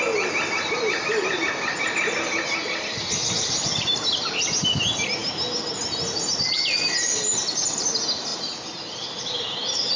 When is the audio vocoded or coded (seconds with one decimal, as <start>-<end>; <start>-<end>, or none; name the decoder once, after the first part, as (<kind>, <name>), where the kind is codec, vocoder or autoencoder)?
none